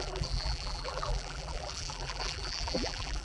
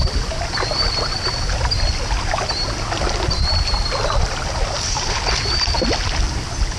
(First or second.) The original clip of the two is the second